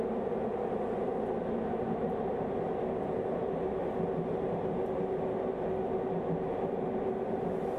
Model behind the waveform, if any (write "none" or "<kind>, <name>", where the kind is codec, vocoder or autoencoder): none